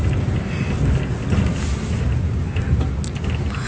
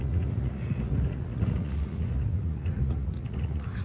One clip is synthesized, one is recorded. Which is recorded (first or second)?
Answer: first